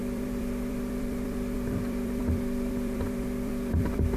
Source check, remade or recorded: remade